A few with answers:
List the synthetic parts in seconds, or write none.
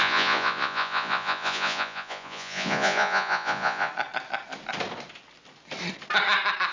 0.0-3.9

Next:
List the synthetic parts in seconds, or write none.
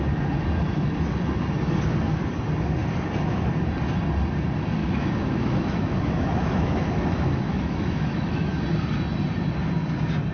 4.8-8.6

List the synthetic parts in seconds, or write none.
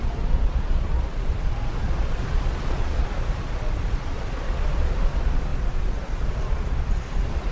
0.0-7.5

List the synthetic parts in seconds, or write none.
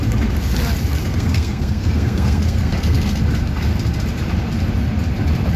1.0-3.2